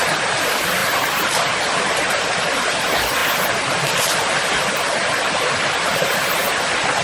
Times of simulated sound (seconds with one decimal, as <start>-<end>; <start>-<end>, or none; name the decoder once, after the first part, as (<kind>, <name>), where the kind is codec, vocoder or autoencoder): 0.8-2.1 (vocoder, BigVGAN v2); 5.9-6.4